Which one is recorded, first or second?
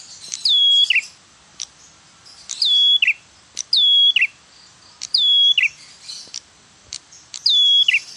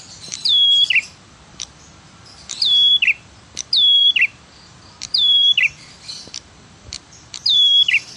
first